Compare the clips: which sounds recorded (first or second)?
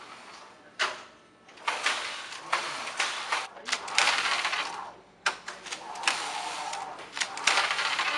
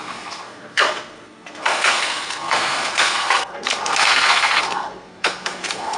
first